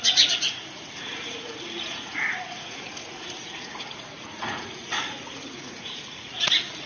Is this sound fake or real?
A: fake